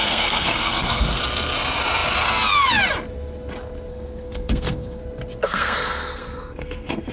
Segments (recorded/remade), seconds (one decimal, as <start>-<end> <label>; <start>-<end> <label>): 0.0-1.2 remade; 1.2-3.9 recorded; 3.9-5.0 remade; 5.0-5.4 recorded; 5.4-7.1 remade